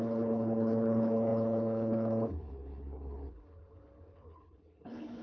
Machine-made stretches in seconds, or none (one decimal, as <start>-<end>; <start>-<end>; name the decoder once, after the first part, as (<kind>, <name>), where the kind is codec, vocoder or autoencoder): 0.0-5.2 (codec, HILCodec)